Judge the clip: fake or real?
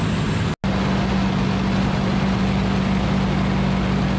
real